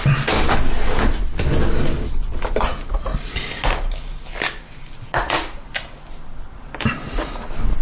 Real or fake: real